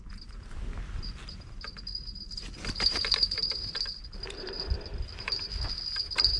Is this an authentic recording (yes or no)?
yes